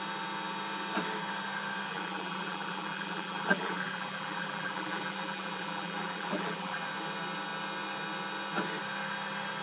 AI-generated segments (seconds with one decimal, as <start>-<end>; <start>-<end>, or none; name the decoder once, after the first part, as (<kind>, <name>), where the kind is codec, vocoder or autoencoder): 1.9-6.8 (vocoder, BigVGAN v2)